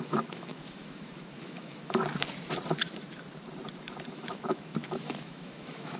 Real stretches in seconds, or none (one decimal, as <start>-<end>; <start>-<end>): 2.0-4.1